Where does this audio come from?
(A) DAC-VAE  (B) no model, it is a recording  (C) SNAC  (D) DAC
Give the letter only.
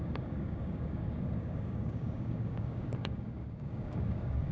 D